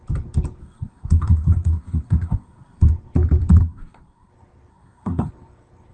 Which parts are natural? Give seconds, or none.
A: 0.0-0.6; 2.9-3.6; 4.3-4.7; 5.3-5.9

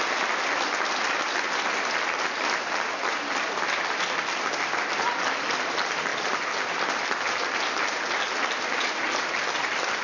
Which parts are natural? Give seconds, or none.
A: 0.0-10.0

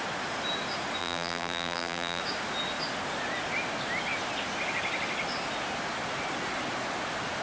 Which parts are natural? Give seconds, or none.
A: 0.0-1.0; 2.2-7.4

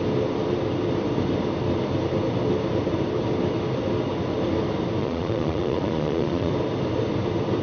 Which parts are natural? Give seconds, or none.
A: 0.0-5.0; 6.5-7.6

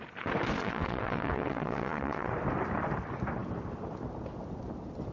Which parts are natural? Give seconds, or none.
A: 0.0-0.6; 2.3-5.1

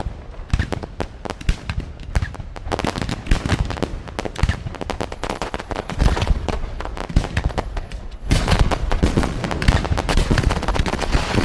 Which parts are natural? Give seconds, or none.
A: 0.0-5.1; 6.9-7.5; 9.4-10.1

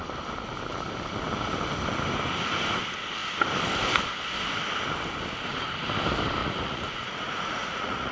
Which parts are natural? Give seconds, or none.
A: 0.0-6.4